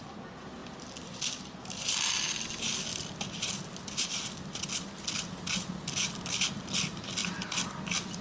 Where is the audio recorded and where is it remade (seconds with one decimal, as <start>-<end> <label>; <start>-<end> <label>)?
0.0-2.9 recorded; 2.9-4.7 remade; 4.7-7.2 recorded; 7.2-8.2 remade

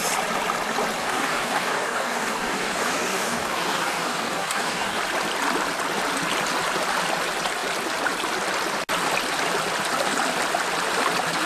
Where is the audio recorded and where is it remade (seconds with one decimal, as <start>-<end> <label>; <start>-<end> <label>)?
0.0-1.0 recorded; 1.0-5.0 remade; 5.0-11.5 recorded